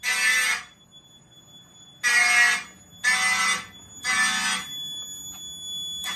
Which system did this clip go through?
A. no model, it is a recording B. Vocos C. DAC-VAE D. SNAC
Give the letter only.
A